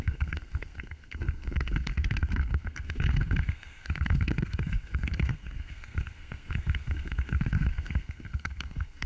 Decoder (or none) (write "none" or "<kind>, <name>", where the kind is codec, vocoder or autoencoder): codec, SNAC